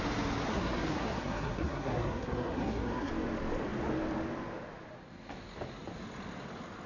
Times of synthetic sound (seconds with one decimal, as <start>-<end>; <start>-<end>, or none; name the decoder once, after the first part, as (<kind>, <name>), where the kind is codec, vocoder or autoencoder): 0.5-3.1 (codec, SNAC)